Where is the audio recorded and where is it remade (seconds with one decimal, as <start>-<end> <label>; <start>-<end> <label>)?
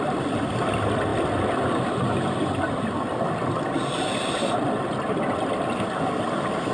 0.0-6.7 recorded